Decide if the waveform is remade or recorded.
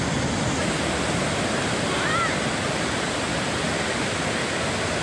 recorded